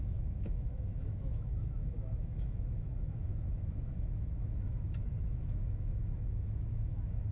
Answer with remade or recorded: remade